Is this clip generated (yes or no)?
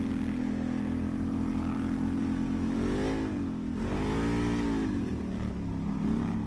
no